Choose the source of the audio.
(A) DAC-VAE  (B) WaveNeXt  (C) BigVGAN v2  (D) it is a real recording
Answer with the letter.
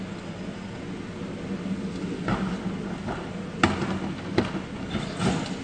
D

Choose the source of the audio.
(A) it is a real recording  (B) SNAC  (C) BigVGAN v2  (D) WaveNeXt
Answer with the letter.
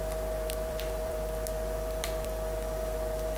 C